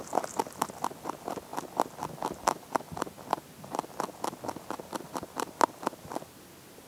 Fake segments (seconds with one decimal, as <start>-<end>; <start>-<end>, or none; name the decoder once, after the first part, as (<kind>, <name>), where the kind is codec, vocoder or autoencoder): none

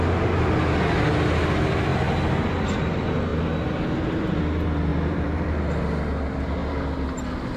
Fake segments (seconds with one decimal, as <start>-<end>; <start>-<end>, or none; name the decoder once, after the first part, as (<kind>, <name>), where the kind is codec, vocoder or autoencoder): 4.9-5.8 (vocoder, BigVGAN v2)